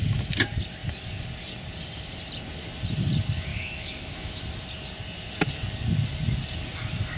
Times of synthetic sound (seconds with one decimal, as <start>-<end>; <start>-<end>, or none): 3.5-4.4